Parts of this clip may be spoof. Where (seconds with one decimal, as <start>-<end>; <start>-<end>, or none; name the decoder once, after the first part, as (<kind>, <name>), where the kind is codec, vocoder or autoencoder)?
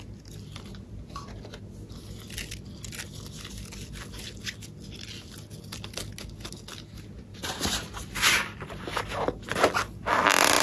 7.3-8.9 (vocoder, BigVGAN v2)